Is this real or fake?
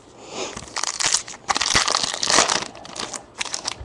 real